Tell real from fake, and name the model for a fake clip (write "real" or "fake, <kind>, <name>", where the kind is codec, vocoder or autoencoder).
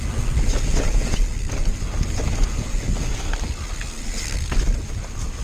real